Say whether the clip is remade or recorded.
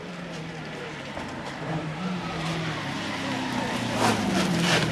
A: remade